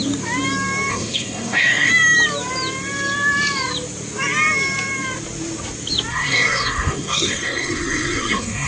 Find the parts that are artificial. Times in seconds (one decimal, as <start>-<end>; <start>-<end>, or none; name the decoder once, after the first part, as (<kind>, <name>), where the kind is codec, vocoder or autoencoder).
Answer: 0.9-1.9 (codec, SNAC); 6.1-8.7